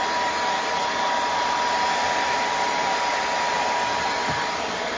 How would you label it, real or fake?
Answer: real